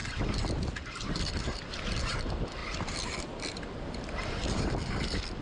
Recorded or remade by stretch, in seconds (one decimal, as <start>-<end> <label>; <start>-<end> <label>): 0.0-1.6 remade; 1.6-2.6 recorded; 2.6-3.5 remade; 3.5-5.4 recorded